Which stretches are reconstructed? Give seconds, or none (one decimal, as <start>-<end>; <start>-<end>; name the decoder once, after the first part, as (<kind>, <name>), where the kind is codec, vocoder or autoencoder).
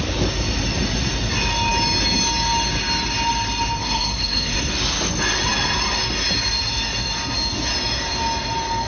3.8-4.7 (codec, SNAC)